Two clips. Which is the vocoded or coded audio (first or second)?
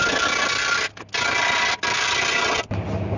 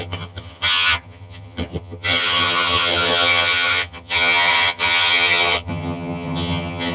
second